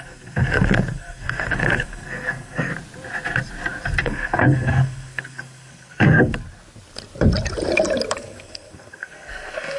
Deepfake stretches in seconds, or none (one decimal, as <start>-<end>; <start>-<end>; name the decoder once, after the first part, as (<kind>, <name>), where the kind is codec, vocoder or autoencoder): 0.0-2.7 (codec, SNAC); 4.0-6.3; 8.2-9.8